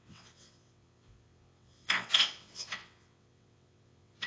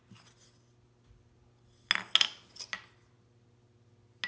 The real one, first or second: second